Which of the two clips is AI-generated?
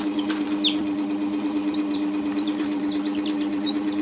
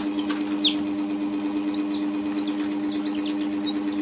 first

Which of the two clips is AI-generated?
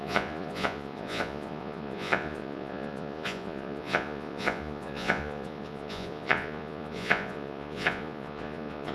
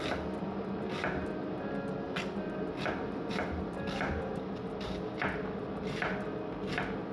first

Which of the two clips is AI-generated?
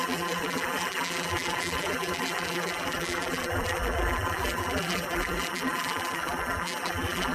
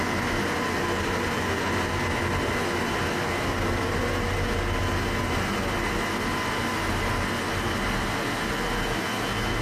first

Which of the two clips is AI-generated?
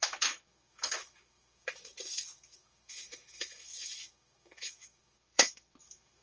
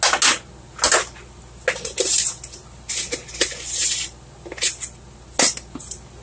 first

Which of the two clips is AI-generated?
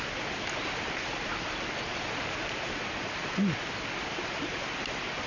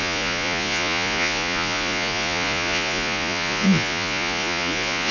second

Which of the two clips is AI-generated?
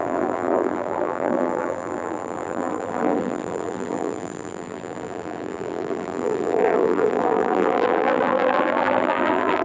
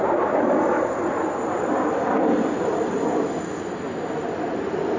first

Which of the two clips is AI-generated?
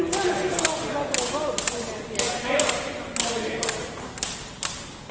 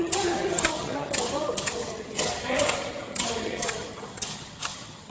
second